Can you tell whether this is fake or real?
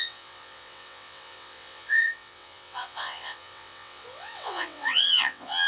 fake